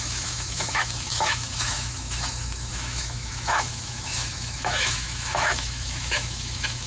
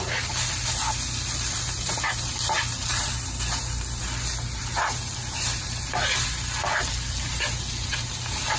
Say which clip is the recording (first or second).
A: second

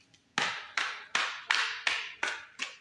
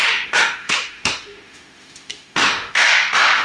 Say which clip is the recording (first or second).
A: first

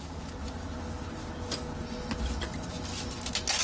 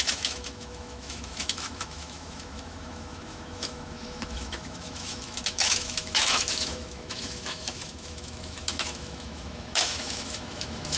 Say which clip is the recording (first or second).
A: first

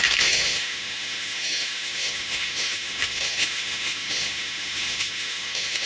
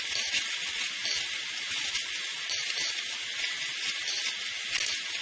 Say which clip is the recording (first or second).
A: second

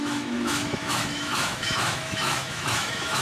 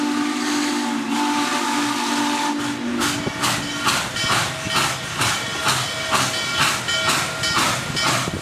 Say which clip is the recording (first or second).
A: second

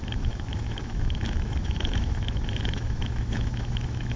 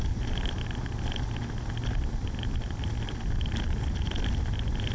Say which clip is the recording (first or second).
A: second